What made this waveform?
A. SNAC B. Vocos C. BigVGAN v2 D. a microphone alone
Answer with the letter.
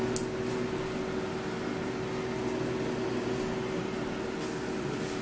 D